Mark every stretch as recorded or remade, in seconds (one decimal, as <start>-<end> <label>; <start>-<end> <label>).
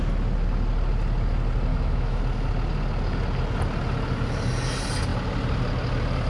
0.0-1.7 recorded; 1.7-2.2 remade; 2.2-6.3 recorded